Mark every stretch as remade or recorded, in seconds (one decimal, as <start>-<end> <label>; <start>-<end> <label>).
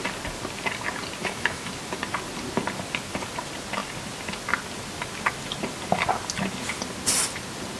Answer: 0.0-1.2 recorded; 1.2-1.7 remade; 1.7-7.8 recorded